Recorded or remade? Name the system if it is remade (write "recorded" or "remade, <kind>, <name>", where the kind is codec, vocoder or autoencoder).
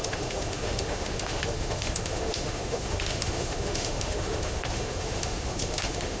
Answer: remade, autoencoder, DAC-VAE